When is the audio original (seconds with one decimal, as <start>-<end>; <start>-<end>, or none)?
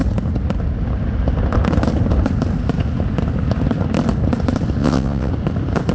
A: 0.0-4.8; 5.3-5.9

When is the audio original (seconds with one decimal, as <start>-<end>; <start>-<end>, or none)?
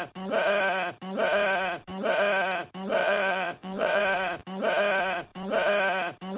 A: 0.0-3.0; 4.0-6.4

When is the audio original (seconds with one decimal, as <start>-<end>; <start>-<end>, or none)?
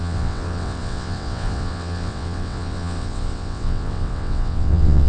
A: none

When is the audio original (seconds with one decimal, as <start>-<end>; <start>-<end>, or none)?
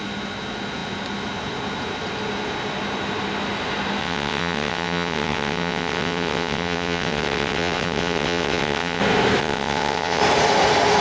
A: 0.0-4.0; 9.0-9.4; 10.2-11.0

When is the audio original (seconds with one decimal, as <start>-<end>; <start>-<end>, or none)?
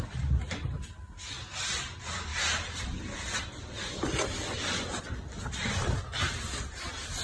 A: 0.0-7.2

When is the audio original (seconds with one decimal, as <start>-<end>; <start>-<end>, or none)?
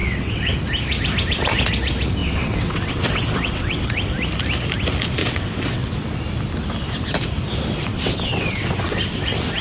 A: 0.6-2.2; 4.1-5.2; 5.9-7.9; 9.2-9.6